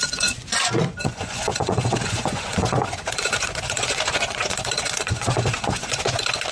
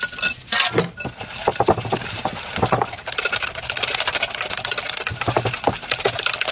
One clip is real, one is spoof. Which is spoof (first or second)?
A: first